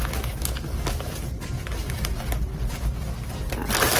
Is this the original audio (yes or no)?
yes